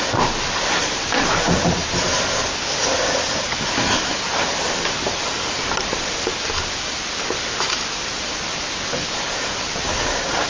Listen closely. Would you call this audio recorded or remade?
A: recorded